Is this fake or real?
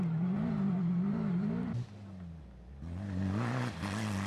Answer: fake